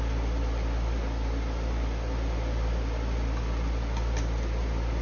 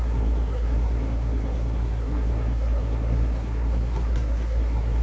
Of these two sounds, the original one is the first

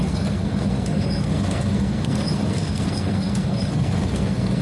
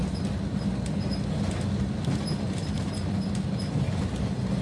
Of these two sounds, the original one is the second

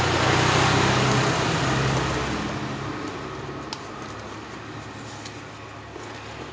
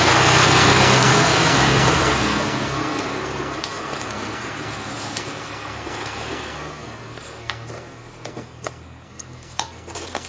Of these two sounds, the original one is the first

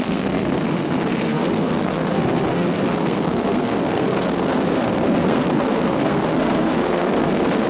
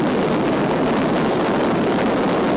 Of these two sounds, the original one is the second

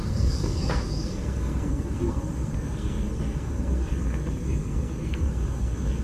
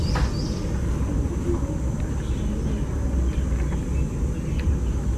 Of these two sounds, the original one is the second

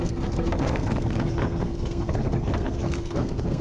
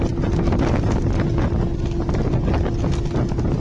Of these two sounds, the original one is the second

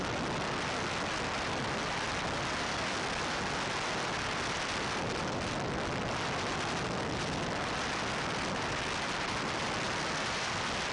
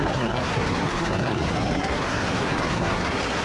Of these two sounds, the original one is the first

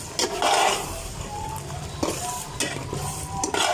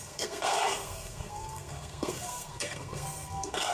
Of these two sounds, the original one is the first